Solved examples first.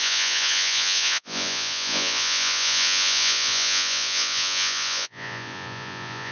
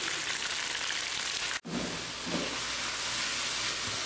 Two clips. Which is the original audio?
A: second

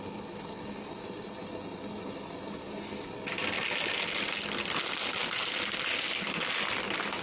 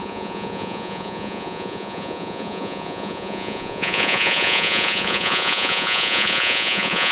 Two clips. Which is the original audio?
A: first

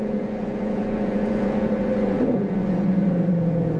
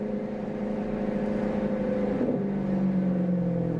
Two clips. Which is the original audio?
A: second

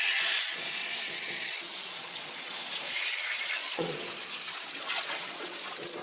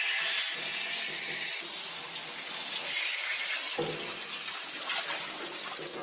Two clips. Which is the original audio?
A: second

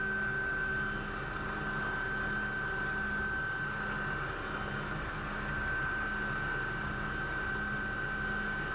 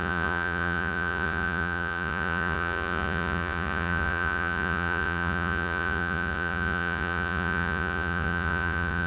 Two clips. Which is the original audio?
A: first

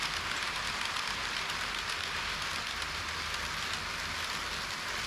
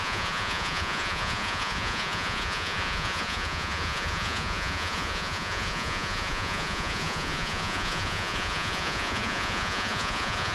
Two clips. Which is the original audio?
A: first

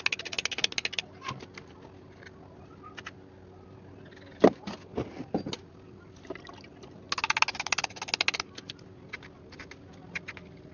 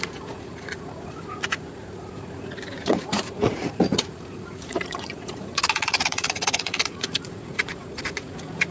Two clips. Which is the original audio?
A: first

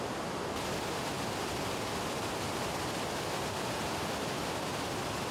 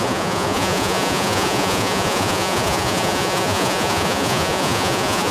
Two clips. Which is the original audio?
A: first